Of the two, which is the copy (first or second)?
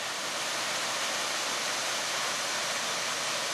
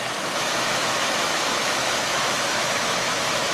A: second